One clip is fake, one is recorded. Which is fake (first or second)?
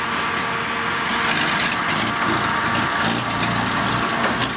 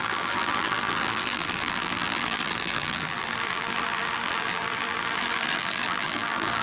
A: second